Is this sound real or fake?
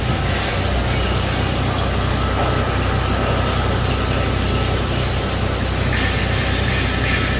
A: real